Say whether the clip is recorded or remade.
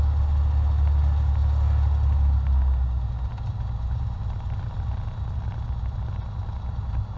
recorded